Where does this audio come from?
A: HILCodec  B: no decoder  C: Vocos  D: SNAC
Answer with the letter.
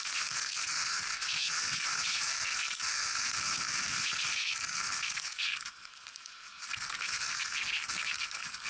D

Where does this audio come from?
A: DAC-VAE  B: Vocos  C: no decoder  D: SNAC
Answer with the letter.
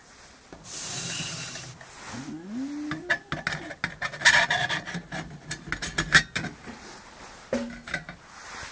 C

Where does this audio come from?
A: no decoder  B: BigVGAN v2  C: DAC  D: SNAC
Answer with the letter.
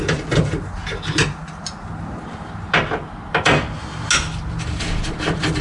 A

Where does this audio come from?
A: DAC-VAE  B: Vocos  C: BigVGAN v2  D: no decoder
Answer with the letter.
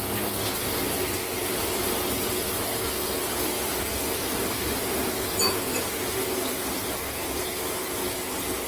D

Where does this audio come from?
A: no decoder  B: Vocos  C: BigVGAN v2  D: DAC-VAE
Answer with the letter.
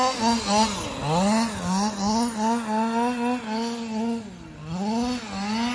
A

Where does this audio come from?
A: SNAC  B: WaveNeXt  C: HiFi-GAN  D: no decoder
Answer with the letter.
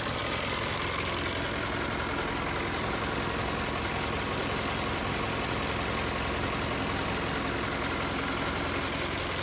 D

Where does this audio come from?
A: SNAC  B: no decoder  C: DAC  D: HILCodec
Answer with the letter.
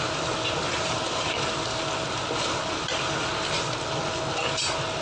B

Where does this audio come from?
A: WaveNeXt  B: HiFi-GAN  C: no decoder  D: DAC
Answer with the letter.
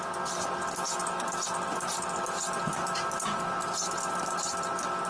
C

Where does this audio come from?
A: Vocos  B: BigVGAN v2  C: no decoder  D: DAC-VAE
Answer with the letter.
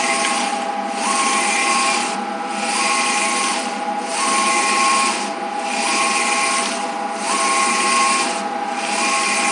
C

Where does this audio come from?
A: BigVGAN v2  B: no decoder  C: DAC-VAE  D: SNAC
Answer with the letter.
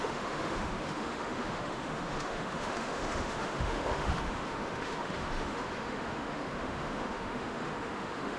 C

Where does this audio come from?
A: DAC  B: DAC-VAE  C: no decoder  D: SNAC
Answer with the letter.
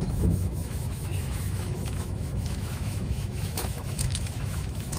B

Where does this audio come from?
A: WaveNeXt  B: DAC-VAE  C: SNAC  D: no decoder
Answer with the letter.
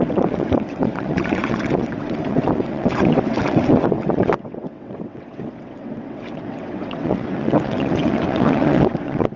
A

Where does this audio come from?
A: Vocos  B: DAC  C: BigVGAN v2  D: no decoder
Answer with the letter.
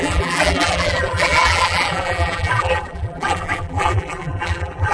C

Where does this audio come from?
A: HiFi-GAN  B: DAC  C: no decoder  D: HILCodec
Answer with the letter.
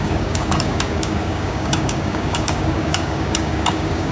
B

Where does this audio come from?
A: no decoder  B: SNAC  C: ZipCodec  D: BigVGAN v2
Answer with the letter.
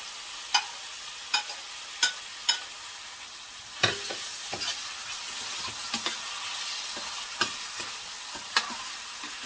A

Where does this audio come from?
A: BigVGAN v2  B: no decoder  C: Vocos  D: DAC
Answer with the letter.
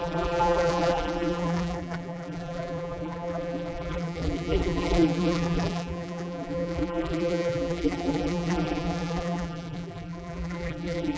A